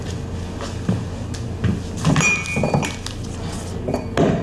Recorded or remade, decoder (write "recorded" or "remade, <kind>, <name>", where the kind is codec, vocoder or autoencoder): recorded